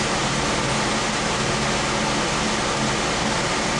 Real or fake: real